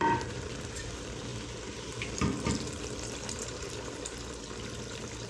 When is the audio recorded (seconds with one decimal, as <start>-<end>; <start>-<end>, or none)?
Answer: none